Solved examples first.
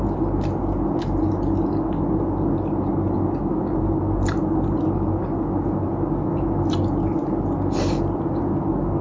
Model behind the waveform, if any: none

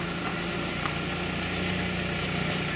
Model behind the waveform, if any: none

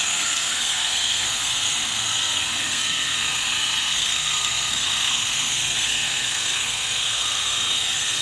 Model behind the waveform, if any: codec, SNAC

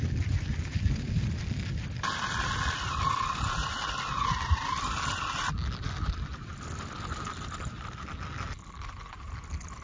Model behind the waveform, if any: none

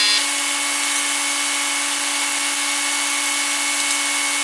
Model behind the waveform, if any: none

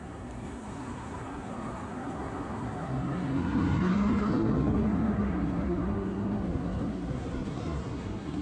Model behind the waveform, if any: codec, SNAC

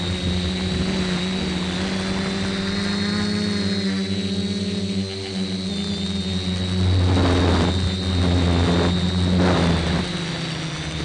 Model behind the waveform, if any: none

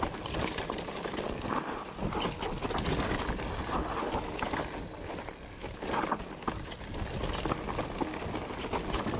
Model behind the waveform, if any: none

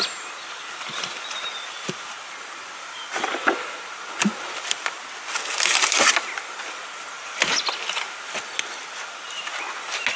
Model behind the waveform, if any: none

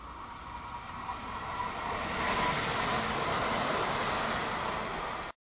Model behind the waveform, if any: none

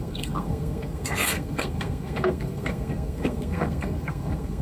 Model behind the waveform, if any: codec, SNAC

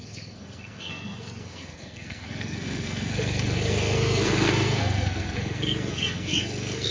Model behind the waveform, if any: codec, SNAC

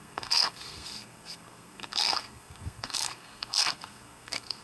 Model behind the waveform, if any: codec, SNAC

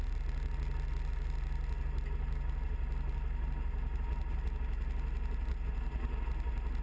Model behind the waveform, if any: none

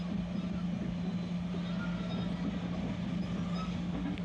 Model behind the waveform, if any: none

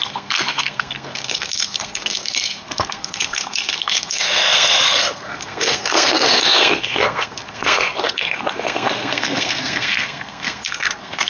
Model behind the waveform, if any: codec, SNAC